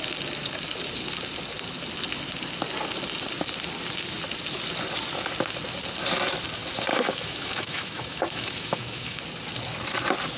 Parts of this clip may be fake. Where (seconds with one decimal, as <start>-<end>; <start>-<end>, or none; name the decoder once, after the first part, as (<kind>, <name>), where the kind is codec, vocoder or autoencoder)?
6.9-9.2 (autoencoder, DAC-VAE)